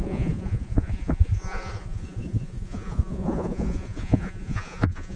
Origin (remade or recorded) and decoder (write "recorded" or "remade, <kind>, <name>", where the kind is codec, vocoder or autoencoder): remade, vocoder, Vocos